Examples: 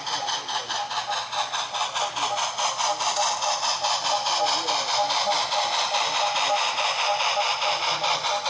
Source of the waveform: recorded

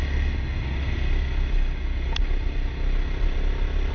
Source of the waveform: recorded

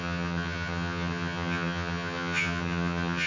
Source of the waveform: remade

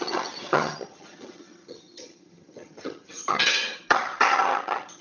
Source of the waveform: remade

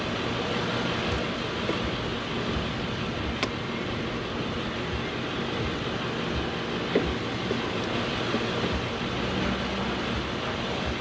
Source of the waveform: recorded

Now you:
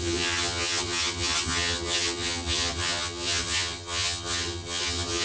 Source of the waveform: remade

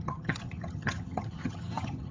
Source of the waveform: remade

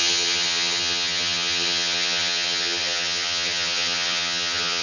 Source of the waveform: remade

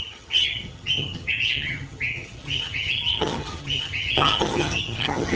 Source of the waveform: remade